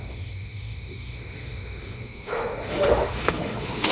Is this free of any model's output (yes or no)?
no